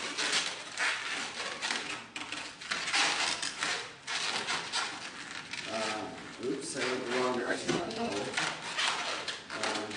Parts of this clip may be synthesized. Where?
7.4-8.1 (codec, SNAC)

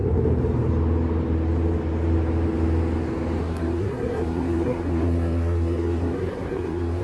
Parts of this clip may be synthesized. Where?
3.4-7.0 (codec, SNAC)

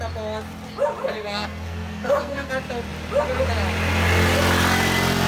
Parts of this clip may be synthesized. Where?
1.0-2.5 (codec, SNAC)

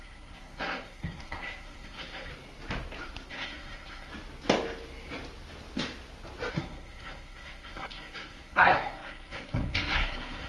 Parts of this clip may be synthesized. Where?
0.0-2.3 (codec, SNAC); 3.3-4.1; 6.5-10.5

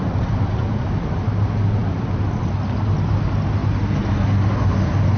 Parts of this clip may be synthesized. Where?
none

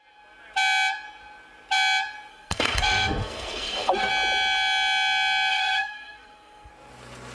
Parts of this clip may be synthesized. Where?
2.3-4.1 (codec, SNAC); 5.5-6.7